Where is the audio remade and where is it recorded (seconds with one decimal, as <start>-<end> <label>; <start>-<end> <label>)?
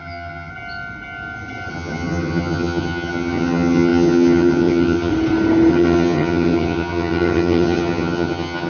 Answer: 0.0-0.5 remade; 0.5-1.7 recorded; 1.7-5.1 remade; 5.1-5.7 recorded; 5.7-8.7 remade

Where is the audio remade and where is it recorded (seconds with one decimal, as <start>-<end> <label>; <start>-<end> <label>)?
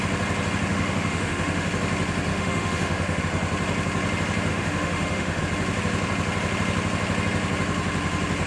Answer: 0.0-0.7 recorded; 0.7-1.7 remade; 1.7-2.3 recorded; 2.3-3.2 remade; 3.2-4.5 recorded; 4.5-5.4 remade; 5.4-8.5 recorded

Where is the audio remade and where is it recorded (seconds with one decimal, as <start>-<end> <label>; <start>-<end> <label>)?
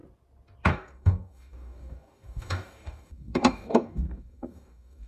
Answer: 0.0-0.7 recorded; 0.7-5.1 remade